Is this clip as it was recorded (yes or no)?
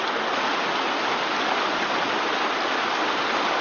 yes